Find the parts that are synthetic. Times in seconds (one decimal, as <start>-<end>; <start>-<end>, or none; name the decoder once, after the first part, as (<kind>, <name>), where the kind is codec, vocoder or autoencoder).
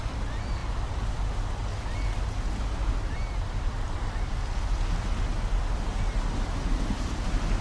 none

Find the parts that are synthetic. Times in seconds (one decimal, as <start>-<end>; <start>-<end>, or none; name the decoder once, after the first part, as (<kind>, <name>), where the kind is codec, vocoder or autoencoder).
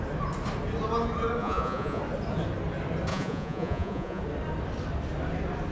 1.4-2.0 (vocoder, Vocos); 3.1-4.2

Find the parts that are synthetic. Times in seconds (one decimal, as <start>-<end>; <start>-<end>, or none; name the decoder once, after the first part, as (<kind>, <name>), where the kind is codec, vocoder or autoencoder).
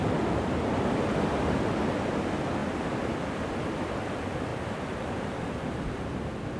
4.5-6.1 (vocoder, BigVGAN v2)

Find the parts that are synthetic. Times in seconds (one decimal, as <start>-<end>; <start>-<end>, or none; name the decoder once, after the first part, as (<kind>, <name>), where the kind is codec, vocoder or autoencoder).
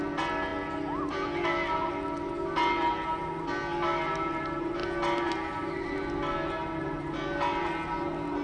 none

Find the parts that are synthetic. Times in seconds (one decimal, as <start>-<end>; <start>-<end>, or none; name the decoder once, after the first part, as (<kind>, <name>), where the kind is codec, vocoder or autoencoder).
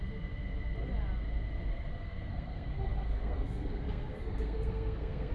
1.7-5.3 (codec, SNAC)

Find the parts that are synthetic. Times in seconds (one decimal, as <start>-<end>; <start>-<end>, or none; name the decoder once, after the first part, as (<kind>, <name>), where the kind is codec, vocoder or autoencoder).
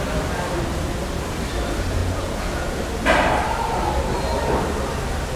2.0-2.8 (vocoder, Vocos)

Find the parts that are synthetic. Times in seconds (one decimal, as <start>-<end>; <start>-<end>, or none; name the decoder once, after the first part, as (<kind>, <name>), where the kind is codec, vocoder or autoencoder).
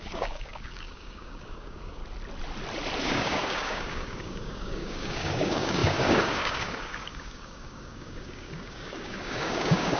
0.0-2.0 (codec, DAC); 3.0-10.0